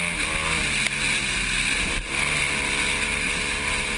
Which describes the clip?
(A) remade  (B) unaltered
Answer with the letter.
B